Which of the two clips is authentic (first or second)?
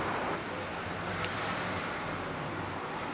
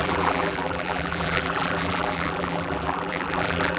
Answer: first